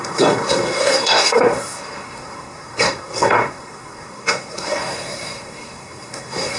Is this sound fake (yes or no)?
yes